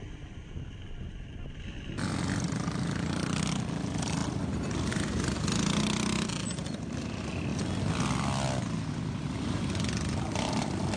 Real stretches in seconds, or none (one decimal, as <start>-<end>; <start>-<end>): 0.0-11.0

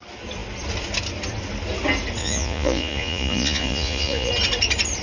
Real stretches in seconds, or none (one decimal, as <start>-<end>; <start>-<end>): 0.0-2.2; 4.3-5.0

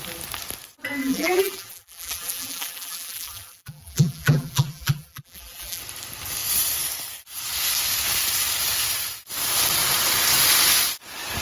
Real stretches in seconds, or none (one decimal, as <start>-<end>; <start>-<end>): 0.0-1.0; 5.8-11.4

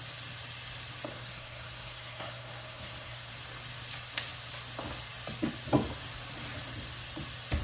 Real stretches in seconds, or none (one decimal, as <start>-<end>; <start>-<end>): 0.0-1.1; 3.3-7.6

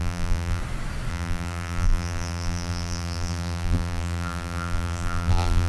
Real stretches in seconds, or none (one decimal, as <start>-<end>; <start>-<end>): 0.6-1.1

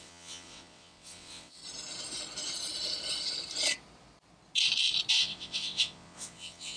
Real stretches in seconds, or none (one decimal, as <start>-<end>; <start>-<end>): 1.6-5.1

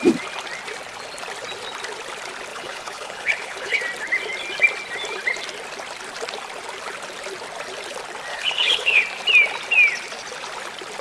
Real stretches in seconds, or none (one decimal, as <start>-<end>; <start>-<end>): 0.0-2.5; 3.8-8.3; 9.0-11.0